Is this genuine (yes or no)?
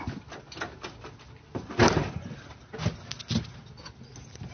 yes